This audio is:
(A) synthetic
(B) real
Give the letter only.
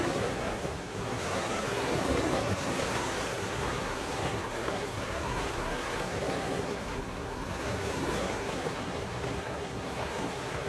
A